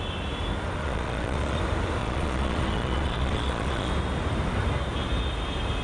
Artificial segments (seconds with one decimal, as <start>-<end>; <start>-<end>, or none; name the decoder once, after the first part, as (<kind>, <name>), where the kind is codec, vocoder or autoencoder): 0.8-1.6 (vocoder, Vocos); 2.0-3.9

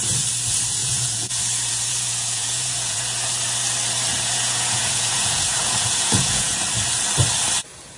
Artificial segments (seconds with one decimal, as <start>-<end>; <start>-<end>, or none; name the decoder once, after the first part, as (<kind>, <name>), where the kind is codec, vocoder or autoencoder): 0.8-3.0 (vocoder, Vocos); 4.1-6.6

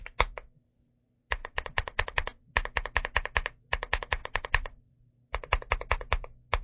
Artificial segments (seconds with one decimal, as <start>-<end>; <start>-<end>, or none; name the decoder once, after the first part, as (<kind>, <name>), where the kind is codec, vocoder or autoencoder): 1.4-2.5 (vocoder, Vocos); 4.2-4.9

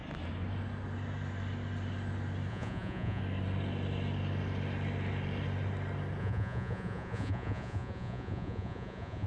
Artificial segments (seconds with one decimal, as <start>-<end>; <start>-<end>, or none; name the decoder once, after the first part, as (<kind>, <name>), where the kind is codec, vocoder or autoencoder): 2.5-3.2 (vocoder, Vocos); 6.2-9.3